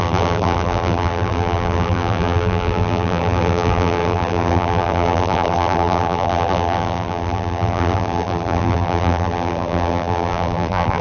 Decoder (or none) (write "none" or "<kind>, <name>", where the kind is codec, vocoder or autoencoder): vocoder, BigVGAN v2